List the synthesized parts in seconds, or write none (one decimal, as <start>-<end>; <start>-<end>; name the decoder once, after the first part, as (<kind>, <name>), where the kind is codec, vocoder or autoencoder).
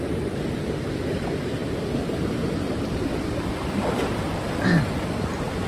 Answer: 0.0-5.7 (vocoder, BigVGAN v2)